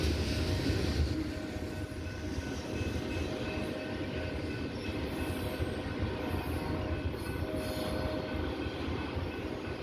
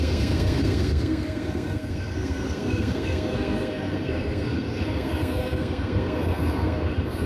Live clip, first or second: first